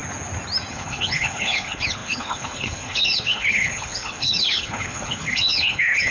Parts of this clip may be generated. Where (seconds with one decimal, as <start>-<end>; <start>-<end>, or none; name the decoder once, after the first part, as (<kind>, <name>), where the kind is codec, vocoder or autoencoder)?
0.7-6.1 (codec, HILCodec)